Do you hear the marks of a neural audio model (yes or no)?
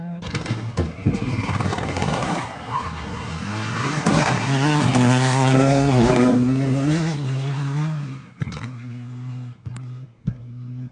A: yes